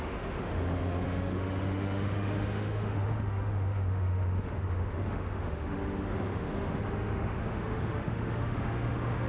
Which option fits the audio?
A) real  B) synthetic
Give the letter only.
B